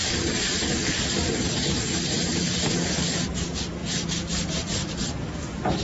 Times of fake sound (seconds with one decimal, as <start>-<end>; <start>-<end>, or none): none